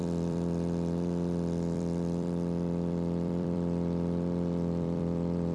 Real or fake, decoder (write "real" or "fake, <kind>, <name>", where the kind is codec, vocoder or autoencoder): fake, vocoder, BigVGAN v2